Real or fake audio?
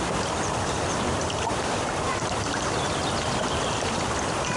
fake